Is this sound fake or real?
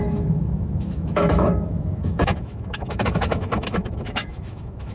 fake